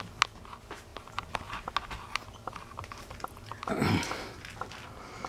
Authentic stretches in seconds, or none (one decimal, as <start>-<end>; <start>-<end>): 0.0-5.3